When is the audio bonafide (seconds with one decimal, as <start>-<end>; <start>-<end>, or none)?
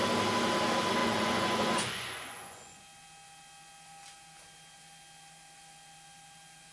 0.0-1.0; 2.8-6.7